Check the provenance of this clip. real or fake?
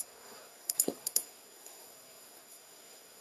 fake